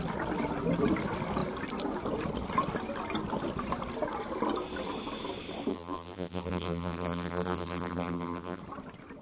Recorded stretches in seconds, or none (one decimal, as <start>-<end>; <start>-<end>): 0.0-5.7; 8.6-9.2